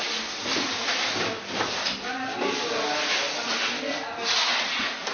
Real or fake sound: real